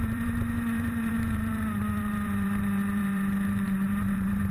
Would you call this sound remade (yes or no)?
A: yes